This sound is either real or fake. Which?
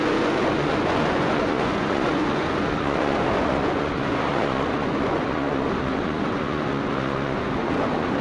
fake